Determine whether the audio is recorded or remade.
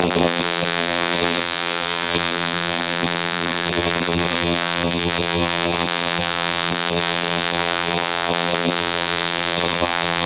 remade